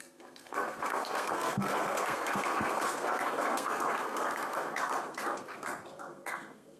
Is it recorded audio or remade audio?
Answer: remade